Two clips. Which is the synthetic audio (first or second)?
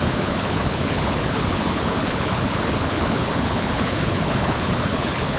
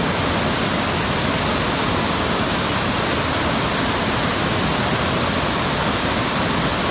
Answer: first